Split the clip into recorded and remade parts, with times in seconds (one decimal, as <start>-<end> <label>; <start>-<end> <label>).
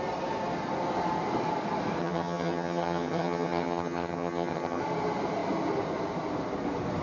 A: 0.0-2.0 recorded; 2.0-4.8 remade; 4.8-7.0 recorded